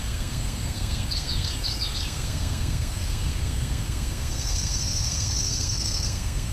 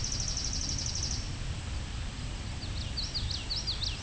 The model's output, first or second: first